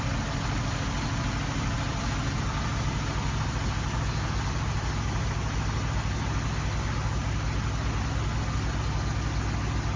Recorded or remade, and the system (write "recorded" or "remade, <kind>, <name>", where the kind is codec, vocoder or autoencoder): recorded